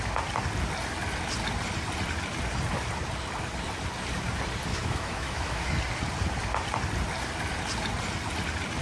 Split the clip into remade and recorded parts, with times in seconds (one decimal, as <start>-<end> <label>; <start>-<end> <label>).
0.0-4.7 recorded; 4.7-5.7 remade; 5.7-8.8 recorded